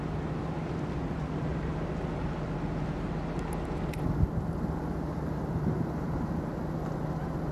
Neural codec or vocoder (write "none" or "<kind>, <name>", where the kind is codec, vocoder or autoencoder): none